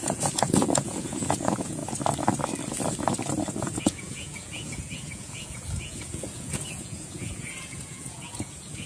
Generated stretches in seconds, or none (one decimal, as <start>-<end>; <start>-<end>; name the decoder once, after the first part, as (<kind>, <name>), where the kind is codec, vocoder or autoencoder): 0.0-1.8 (vocoder, Vocos); 3.5-8.9